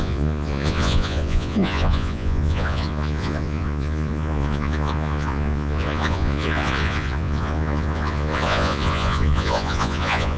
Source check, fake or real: fake